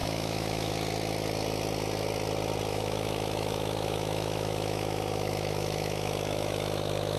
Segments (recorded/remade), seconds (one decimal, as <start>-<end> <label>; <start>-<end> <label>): 0.0-0.7 remade; 0.7-2.7 recorded; 2.7-7.2 remade

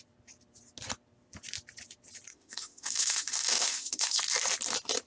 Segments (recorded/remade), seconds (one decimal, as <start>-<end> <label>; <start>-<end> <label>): 0.0-2.3 recorded; 2.3-4.2 remade; 4.2-5.1 recorded

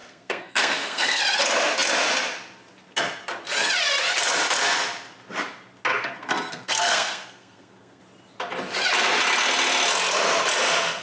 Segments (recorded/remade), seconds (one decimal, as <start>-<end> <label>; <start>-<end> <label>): 0.0-1.2 remade; 1.2-5.9 recorded; 5.9-8.0 remade; 8.0-11.0 recorded

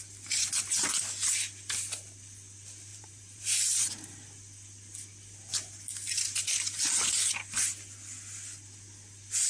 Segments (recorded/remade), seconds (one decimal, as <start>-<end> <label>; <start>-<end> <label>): 0.0-2.9 recorded; 2.9-3.9 remade; 3.9-9.5 recorded

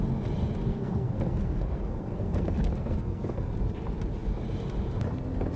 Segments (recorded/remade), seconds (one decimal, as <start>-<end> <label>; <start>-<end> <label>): 0.0-0.7 recorded; 0.7-3.5 remade; 3.5-5.6 recorded

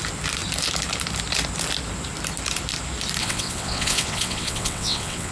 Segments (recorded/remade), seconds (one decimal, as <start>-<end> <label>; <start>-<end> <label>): 0.0-3.2 recorded; 3.2-5.3 remade

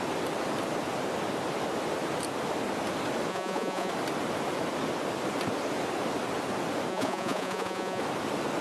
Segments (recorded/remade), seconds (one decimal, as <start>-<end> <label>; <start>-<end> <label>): 0.0-3.3 recorded; 3.3-3.9 remade; 3.9-6.9 recorded; 6.9-8.0 remade; 8.0-8.6 recorded

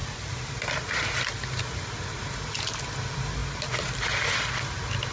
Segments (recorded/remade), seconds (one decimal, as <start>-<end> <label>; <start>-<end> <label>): 0.0-5.1 recorded